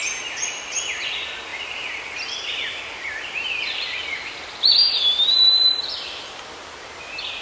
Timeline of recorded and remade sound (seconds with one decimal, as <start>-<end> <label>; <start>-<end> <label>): 0.0-1.5 recorded; 1.5-2.8 remade; 2.8-4.7 recorded; 4.7-6.3 remade; 6.3-7.4 recorded